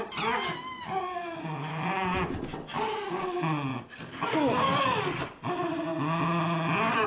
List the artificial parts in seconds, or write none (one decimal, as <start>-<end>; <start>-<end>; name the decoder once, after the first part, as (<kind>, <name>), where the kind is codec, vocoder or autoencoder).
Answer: none